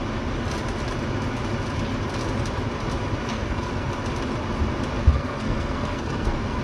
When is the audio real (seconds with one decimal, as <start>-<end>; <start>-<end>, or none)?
0.0-3.3; 3.9-5.0